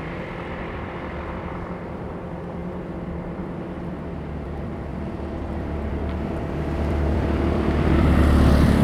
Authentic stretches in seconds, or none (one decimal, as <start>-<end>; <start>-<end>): none